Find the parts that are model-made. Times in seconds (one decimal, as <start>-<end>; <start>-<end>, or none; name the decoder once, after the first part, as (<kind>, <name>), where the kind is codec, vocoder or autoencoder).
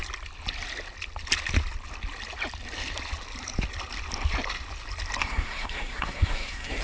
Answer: 5.2-6.8 (codec, SNAC)